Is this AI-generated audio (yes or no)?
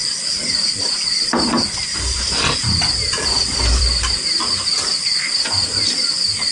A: yes